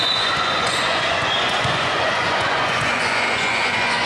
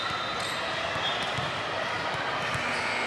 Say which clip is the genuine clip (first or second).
second